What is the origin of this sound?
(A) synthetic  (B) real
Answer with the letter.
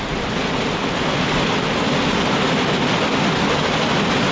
B